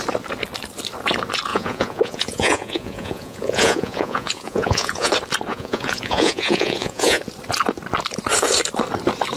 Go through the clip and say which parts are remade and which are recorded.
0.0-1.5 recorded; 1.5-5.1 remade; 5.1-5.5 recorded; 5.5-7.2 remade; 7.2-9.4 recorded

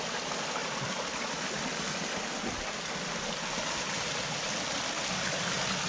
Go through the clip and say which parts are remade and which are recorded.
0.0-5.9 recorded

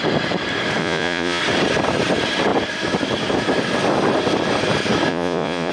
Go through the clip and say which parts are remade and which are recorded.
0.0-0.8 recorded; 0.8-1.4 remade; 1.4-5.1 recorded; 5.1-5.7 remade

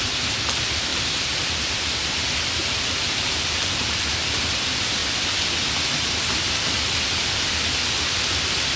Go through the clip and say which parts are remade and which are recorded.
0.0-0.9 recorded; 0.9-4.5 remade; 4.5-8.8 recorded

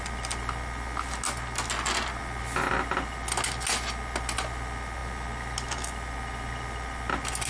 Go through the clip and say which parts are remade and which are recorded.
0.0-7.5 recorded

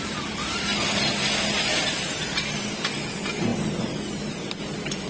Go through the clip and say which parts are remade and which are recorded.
0.0-5.1 recorded